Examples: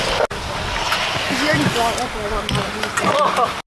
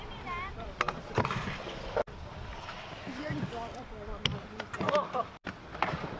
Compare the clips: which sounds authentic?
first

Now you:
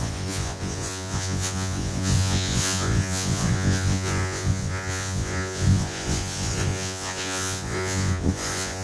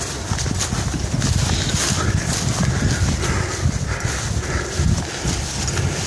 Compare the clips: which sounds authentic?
second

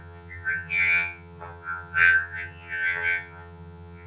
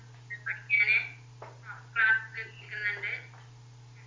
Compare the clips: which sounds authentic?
second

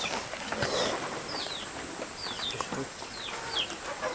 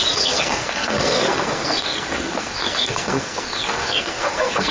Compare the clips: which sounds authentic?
first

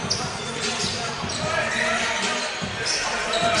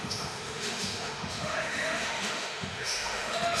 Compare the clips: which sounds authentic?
first